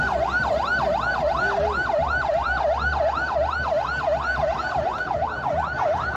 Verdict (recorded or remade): recorded